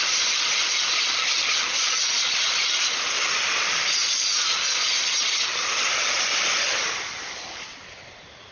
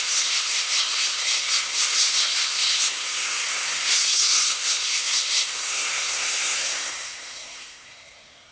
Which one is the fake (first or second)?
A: second